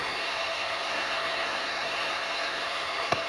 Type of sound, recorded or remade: remade